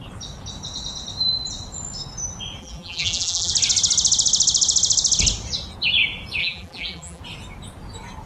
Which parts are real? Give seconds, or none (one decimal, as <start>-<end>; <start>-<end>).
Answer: 0.0-2.6; 3.5-6.4; 7.2-8.3

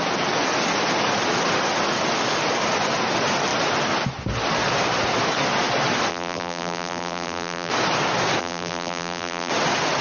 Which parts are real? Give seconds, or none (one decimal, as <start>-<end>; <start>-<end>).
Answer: 0.0-6.1; 7.7-8.4; 9.5-10.0

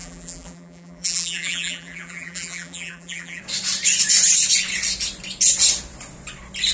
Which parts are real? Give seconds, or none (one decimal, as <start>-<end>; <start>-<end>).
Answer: 3.4-6.7